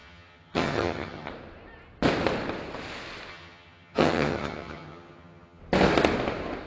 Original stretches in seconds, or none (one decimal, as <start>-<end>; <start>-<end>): 1.3-3.3; 5.6-6.7